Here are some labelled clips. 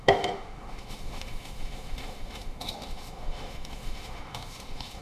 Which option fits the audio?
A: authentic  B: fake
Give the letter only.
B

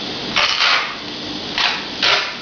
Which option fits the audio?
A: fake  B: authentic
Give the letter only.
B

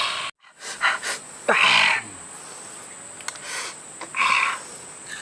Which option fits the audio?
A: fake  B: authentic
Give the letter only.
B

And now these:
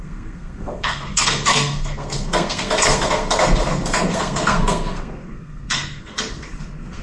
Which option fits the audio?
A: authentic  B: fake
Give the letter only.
B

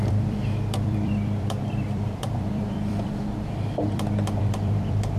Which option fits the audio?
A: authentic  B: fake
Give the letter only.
B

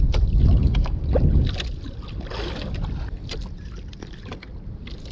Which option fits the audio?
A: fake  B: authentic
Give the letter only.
B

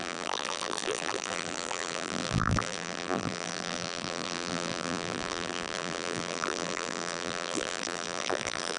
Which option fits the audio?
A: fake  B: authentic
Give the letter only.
A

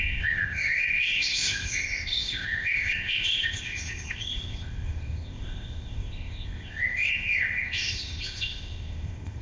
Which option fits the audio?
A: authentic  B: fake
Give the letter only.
B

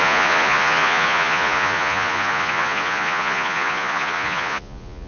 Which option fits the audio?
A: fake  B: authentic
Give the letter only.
A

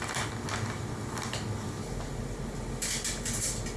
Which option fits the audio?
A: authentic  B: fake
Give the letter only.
A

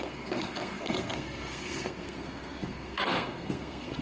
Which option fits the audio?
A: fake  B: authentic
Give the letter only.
A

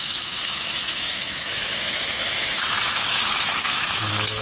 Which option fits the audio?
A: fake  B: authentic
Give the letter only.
A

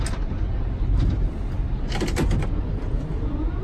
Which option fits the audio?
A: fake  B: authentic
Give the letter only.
B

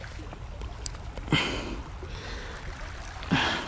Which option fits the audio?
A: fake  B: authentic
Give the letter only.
B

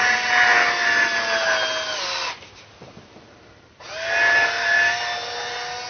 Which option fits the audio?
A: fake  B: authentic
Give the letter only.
B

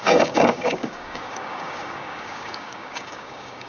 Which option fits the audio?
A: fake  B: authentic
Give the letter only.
A